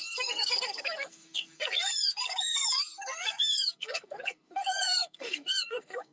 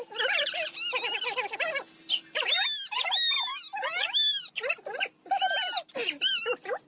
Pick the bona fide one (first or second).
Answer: second